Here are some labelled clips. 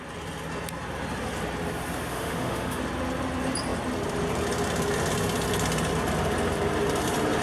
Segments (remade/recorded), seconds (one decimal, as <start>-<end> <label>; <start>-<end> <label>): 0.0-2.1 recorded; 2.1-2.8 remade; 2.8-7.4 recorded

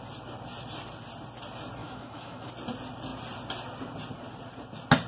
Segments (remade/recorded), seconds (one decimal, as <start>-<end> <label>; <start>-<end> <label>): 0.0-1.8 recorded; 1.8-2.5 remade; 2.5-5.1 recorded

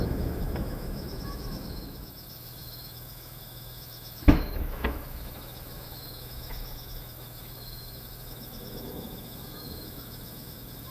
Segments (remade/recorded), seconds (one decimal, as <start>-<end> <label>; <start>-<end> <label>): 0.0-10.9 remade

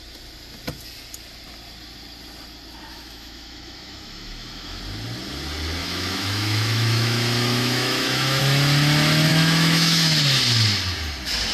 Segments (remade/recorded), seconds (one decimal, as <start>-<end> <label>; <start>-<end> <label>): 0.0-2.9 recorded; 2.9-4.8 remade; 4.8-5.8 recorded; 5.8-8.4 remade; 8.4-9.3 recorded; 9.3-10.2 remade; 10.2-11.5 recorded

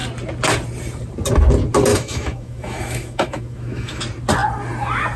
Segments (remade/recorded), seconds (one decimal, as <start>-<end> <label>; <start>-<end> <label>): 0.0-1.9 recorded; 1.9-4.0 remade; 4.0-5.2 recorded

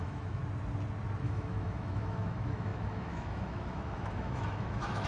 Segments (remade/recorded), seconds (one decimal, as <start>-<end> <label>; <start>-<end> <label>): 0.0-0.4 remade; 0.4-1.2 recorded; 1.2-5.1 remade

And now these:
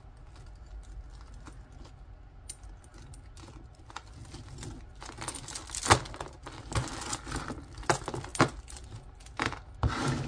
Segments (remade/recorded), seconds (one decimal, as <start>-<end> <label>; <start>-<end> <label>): 0.0-10.3 recorded